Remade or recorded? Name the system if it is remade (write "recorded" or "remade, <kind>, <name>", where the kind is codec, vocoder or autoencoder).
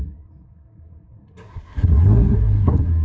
remade, codec, SNAC